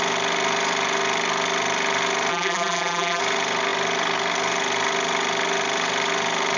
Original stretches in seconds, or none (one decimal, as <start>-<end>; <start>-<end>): 0.0-2.3; 3.2-6.6